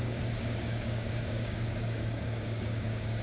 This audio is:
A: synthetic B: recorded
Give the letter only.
A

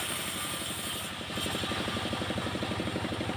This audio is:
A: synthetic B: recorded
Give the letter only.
B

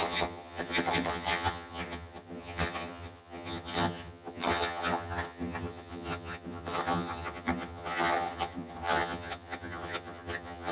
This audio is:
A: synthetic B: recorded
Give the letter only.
A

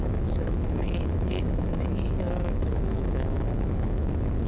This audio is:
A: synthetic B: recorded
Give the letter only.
A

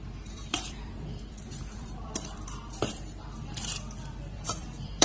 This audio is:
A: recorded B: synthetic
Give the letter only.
B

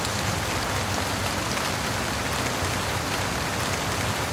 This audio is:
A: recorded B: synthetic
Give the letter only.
A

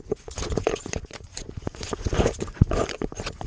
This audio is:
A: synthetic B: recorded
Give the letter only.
A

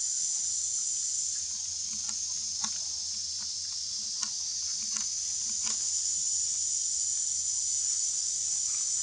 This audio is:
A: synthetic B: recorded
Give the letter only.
B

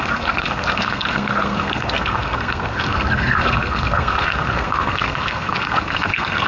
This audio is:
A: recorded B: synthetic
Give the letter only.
B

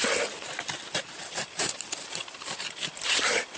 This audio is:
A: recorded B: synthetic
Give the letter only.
A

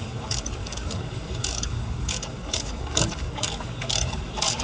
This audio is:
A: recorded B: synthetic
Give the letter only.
B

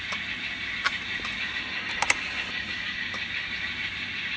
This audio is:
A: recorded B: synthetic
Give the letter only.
A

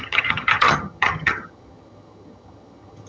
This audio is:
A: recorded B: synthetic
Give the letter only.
B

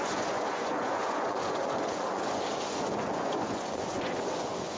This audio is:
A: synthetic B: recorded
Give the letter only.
A